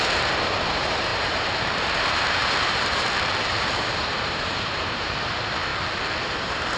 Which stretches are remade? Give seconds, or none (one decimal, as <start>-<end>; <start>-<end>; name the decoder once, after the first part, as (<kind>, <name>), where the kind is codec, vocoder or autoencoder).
0.0-5.7 (vocoder, BigVGAN v2); 6.2-6.8